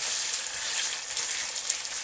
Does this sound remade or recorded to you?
recorded